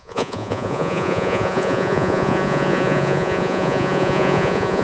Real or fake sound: fake